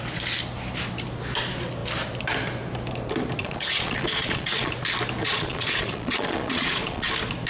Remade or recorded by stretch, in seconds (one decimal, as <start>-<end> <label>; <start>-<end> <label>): 0.0-3.4 recorded; 3.4-4.7 remade; 4.7-5.2 recorded; 5.2-7.1 remade; 7.1-7.5 recorded